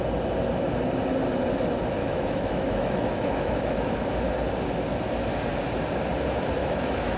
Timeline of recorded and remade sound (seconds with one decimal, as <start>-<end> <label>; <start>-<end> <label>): 0.0-2.0 recorded; 2.0-4.3 remade; 4.3-6.6 recorded; 6.6-7.2 remade